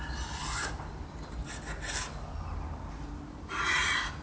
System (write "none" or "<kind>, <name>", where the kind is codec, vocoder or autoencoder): none